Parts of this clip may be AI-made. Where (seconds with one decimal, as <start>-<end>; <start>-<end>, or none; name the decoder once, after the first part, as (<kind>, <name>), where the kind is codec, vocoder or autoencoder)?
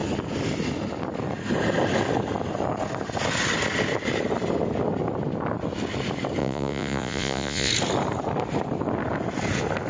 6.4-7.7 (vocoder, Vocos)